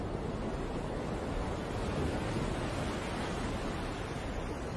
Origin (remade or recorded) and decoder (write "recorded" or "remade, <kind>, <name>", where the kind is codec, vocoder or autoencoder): recorded